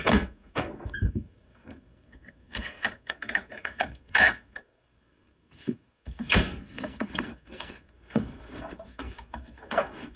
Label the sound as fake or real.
fake